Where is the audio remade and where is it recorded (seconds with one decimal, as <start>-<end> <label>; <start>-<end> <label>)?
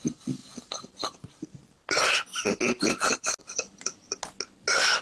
0.0-5.0 recorded